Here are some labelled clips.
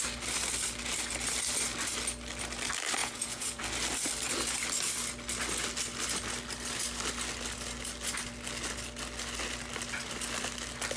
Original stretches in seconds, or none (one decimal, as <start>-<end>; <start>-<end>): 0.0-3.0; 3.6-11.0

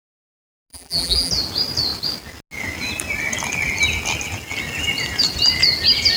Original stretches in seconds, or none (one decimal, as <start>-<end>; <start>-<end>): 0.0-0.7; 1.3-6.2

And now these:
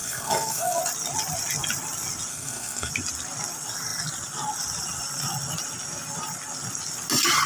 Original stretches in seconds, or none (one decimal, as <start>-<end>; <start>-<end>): 0.8-2.3; 2.9-7.5

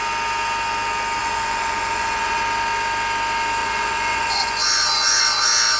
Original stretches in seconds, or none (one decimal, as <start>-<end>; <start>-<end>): 0.0-1.2; 2.4-3.6; 5.2-5.8

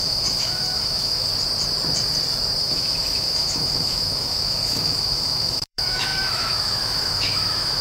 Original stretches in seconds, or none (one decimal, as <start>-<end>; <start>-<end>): 1.3-2.6

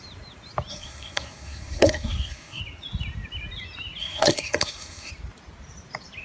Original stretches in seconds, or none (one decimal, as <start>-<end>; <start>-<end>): 0.0-0.7; 2.6-4.0; 5.1-6.2